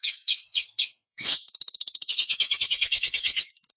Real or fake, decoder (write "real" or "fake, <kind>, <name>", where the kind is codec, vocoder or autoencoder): fake, codec, SNAC